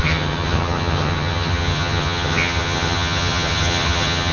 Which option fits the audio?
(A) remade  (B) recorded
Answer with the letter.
A